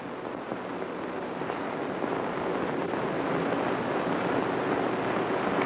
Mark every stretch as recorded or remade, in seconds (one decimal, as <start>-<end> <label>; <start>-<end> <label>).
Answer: 0.0-5.7 recorded